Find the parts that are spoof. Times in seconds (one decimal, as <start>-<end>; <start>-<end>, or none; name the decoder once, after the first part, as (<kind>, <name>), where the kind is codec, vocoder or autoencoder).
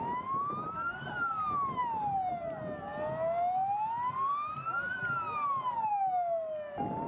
none